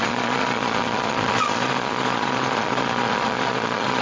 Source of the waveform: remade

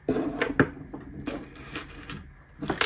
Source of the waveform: recorded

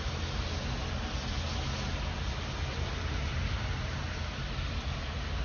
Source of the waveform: recorded